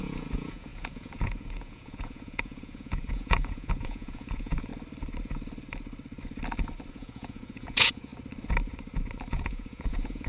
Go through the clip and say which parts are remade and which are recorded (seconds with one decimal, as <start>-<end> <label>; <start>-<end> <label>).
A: 0.0-4.7 remade; 4.7-6.9 recorded; 6.9-8.1 remade; 8.1-9.3 recorded; 9.3-10.3 remade